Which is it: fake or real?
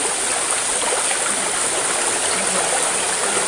real